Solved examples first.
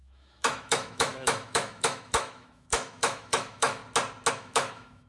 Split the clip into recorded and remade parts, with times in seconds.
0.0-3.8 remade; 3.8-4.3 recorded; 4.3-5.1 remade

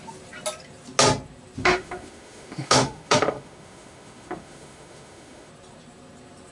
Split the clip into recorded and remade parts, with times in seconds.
0.0-1.6 recorded; 1.6-5.5 remade; 5.5-6.5 recorded